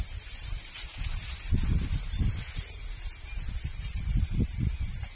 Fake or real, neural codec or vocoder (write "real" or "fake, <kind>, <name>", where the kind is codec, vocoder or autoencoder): fake, vocoder, BigVGAN v2